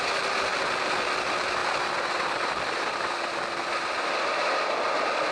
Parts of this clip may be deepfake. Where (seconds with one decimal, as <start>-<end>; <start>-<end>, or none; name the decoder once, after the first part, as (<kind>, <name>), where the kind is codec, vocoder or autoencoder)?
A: none